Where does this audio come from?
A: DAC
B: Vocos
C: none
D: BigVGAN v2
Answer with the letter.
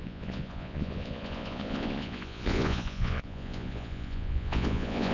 B